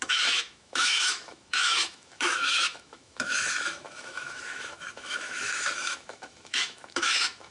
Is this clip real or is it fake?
fake